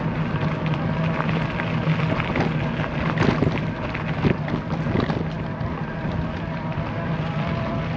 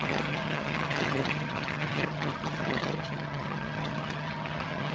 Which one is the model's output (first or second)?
second